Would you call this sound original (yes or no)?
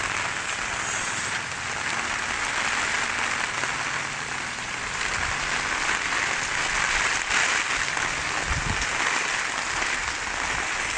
yes